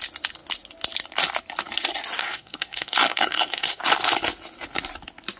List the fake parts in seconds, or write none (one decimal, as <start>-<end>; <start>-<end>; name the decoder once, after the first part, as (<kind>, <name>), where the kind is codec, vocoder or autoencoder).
2.2-3.8 (codec, SNAC)